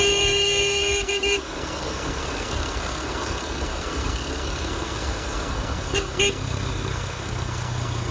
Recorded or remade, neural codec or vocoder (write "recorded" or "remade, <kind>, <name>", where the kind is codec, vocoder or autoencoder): remade, codec, SNAC